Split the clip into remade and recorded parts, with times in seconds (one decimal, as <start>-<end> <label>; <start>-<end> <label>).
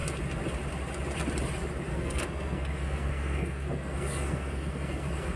0.0-1.9 recorded; 1.9-5.4 remade